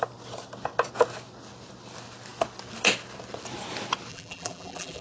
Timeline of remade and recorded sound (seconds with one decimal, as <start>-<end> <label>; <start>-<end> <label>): 0.0-4.1 recorded; 4.1-5.0 remade